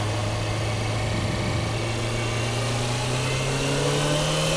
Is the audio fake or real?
real